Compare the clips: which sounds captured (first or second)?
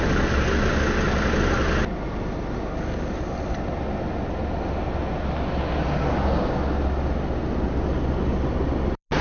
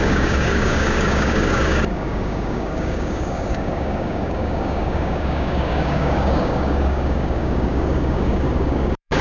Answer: first